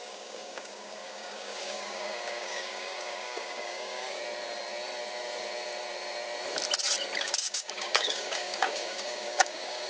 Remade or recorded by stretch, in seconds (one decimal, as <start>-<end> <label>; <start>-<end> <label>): 0.0-4.2 remade; 4.2-7.2 recorded; 7.2-9.9 remade

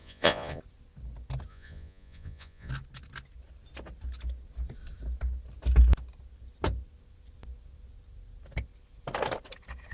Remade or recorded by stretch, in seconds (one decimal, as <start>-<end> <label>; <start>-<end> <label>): 0.0-0.6 remade; 0.6-1.5 recorded; 1.5-2.7 remade; 2.7-9.9 recorded

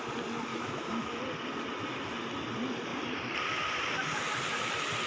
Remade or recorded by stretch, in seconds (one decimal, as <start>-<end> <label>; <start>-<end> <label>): 0.0-0.5 recorded; 0.5-1.2 remade; 1.2-5.1 recorded

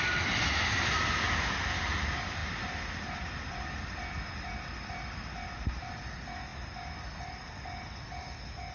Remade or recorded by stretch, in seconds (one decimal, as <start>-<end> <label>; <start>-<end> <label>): 0.0-8.7 recorded